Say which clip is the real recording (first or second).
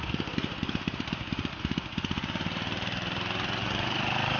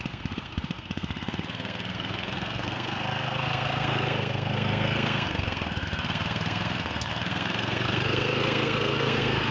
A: first